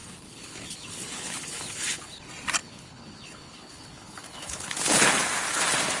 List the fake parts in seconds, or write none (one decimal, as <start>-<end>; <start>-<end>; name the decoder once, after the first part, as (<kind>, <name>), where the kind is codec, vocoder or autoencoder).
0.0-2.2 (codec, HILCodec); 2.6-5.1